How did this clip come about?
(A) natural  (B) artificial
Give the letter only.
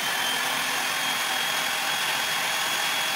A